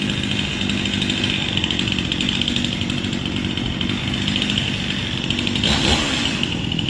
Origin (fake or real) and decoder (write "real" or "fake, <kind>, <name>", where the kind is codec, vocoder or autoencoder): real